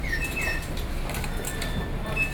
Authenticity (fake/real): real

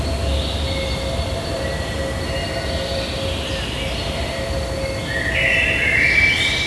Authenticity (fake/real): real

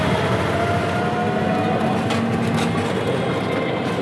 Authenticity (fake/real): real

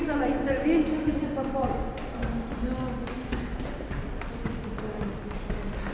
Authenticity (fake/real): real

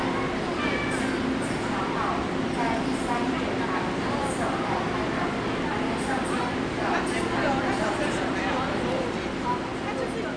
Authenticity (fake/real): real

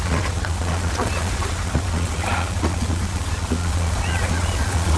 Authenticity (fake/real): fake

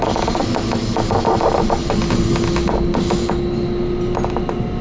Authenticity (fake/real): real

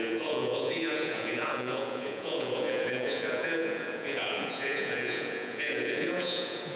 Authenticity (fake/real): fake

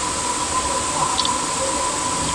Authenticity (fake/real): real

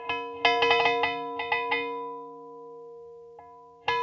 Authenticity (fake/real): real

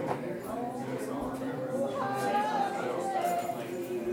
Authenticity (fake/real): real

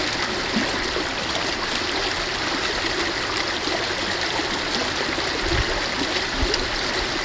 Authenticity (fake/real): real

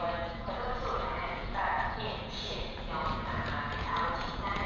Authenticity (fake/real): fake